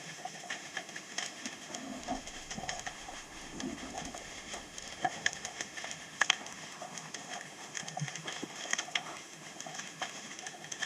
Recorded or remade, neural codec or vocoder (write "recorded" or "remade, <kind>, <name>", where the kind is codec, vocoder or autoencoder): remade, autoencoder, DAC-VAE